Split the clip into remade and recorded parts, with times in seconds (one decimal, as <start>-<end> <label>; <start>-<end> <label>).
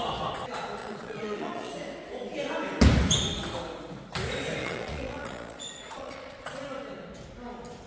0.0-0.8 recorded; 0.8-1.7 remade; 1.7-4.6 recorded; 4.6-6.5 remade; 6.5-7.9 recorded